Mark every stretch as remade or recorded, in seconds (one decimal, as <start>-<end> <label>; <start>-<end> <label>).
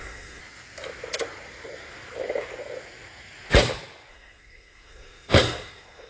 0.0-0.4 remade; 0.4-4.1 recorded; 4.1-6.1 remade